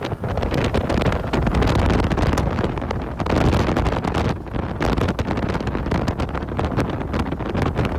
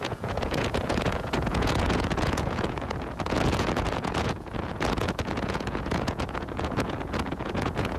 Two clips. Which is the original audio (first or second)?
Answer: first